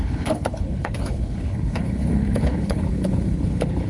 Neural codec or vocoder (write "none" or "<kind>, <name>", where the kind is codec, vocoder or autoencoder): codec, HILCodec